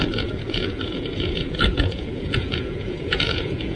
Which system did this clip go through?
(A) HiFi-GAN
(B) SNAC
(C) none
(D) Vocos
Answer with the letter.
D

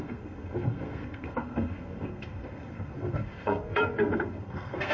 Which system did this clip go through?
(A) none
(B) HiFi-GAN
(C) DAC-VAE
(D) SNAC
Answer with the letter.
D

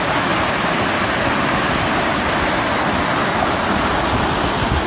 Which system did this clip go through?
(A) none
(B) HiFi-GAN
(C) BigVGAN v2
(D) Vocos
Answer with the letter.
A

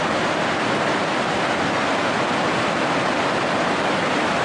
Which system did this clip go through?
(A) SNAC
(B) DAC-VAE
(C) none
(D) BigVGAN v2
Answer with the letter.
C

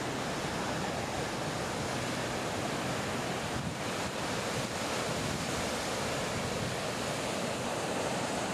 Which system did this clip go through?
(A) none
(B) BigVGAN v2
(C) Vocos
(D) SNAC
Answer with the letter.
A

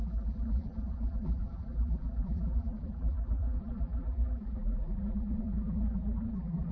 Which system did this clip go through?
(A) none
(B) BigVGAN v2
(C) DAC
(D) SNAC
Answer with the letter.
B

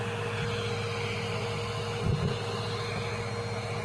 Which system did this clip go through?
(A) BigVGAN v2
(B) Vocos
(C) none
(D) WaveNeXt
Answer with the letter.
C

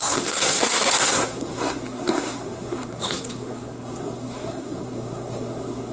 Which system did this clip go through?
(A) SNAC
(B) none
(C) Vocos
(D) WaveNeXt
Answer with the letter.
A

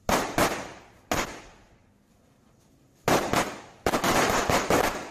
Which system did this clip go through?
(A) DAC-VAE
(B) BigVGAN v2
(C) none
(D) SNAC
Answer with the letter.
C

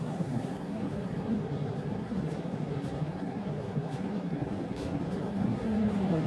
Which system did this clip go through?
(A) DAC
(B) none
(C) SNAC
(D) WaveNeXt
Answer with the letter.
C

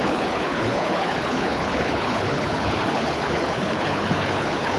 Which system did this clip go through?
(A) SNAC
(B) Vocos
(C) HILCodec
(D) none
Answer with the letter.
C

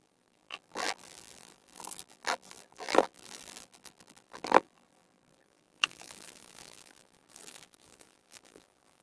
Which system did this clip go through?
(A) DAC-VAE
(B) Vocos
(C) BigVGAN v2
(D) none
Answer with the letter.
C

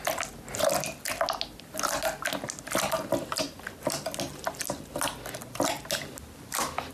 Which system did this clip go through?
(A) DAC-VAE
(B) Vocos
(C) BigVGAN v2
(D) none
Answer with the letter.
D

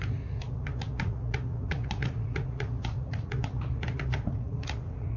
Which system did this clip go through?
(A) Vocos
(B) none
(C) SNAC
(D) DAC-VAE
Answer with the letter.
A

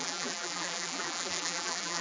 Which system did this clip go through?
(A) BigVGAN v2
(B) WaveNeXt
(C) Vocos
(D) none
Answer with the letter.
A